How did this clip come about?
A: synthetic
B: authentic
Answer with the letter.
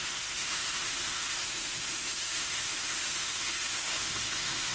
A